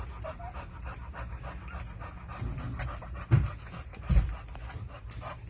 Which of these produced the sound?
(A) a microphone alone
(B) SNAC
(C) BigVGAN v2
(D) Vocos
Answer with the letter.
A